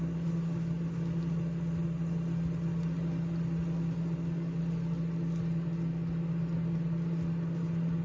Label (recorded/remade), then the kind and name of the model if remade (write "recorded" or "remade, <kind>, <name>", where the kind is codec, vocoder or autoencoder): recorded